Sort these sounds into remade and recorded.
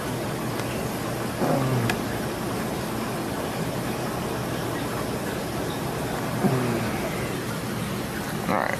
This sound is recorded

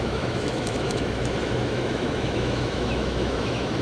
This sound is remade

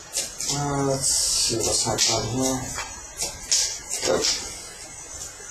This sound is recorded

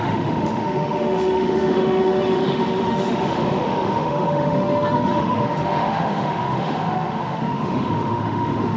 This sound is remade